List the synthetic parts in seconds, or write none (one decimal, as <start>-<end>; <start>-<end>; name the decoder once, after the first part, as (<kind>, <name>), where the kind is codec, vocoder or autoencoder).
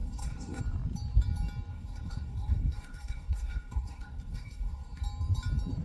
0.0-0.6 (codec, SNAC); 1.7-5.0